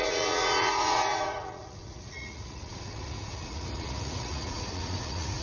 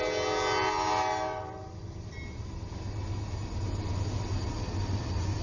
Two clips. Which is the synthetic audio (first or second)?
first